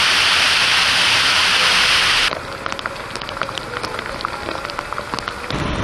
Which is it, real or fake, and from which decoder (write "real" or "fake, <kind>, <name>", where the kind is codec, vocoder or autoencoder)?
real